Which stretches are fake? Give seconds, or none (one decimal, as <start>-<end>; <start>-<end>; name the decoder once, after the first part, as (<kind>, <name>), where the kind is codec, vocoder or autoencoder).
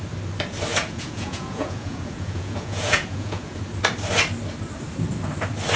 0.7-3.6 (vocoder, Vocos)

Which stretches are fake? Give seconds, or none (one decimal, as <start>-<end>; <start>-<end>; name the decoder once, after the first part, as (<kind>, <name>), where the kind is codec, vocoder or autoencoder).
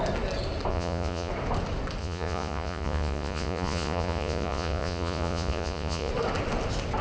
0.7-1.3 (vocoder, Vocos); 2.0-6.1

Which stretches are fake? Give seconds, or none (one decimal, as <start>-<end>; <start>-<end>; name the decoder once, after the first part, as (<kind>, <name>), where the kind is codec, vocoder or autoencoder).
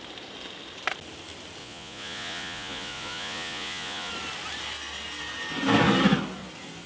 1.6-4.1 (vocoder, Vocos)